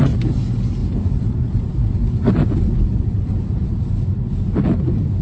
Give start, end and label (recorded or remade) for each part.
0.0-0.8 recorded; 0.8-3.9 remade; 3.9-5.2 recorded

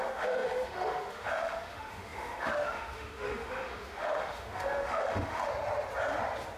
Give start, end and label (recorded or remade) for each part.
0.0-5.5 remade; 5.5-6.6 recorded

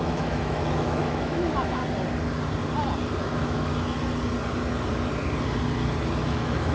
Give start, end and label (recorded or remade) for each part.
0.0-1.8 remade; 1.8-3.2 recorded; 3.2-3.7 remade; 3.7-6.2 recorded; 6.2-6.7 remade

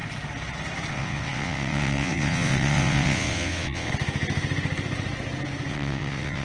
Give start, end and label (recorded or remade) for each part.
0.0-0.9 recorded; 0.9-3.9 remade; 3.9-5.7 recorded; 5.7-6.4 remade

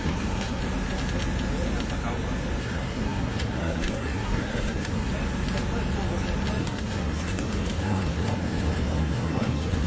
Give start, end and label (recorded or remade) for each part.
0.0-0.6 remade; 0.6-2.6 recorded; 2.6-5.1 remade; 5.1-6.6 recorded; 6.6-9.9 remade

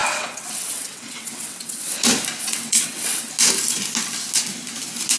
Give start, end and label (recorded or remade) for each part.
0.0-2.0 remade; 2.0-2.4 recorded; 2.4-3.3 remade; 3.3-5.2 recorded

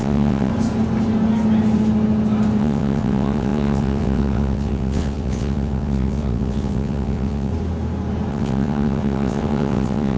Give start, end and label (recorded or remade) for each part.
0.0-0.5 remade; 0.5-2.6 recorded; 2.6-7.5 remade; 7.5-8.3 recorded; 8.3-10.2 remade